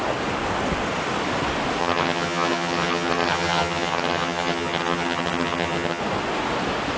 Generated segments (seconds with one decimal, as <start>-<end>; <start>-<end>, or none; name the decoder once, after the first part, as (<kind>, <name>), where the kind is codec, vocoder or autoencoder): 1.8-6.0 (vocoder, HiFi-GAN)